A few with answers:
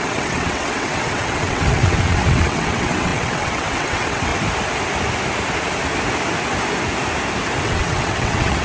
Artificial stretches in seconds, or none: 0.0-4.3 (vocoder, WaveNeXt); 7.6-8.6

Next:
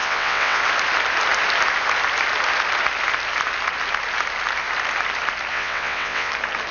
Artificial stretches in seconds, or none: 0.0-0.6 (vocoder, WaveNeXt); 5.5-6.3

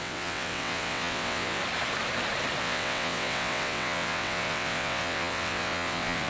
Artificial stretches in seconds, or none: 0.0-1.6 (vocoder, WaveNeXt); 2.6-6.3

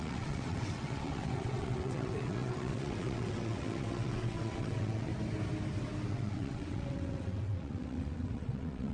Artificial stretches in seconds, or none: 0.0-5.1 (vocoder, WaveNeXt); 6.1-8.9